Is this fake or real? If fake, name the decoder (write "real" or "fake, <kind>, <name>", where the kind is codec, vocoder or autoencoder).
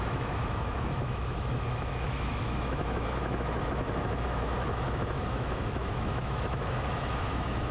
fake, autoencoder, DAC-VAE